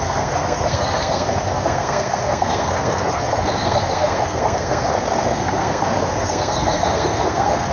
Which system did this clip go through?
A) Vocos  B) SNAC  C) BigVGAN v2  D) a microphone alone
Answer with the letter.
B